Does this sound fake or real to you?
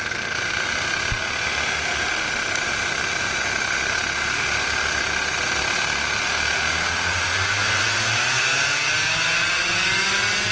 real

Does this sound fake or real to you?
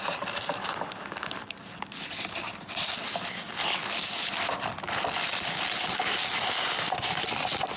real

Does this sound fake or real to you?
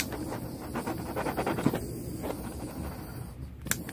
real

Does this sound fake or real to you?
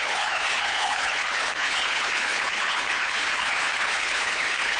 fake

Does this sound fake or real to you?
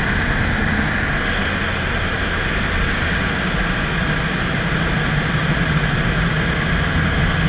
real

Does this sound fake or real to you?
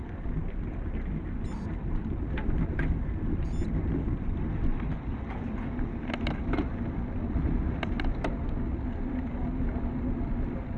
real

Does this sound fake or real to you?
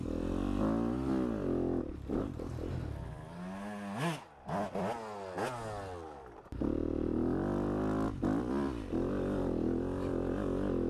real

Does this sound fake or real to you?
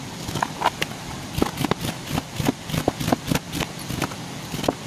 real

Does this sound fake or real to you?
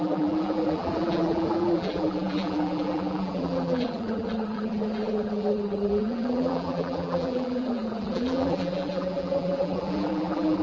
fake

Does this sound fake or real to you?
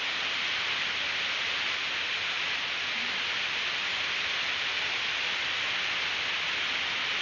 real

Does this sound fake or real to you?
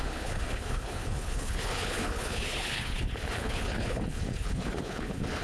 fake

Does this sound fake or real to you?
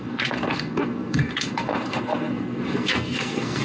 fake